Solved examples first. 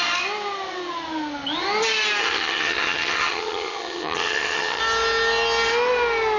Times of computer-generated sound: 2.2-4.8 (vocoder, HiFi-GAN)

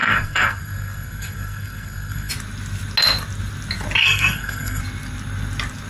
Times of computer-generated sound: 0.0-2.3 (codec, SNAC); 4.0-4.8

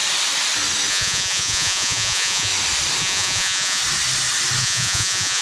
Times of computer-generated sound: 0.9-2.5 (vocoder, Vocos); 3.0-3.8; 4.6-5.4

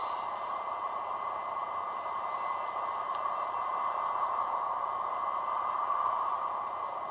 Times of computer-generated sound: 0.0-1.1 (vocoder, BigVGAN v2)